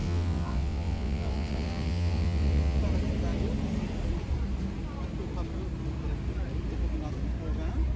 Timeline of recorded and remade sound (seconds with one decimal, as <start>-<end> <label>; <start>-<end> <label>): 0.0-2.8 remade; 2.8-8.0 recorded